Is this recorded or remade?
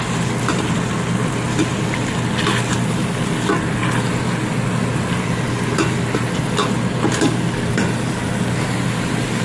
recorded